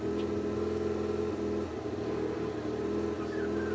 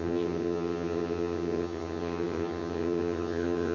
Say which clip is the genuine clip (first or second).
first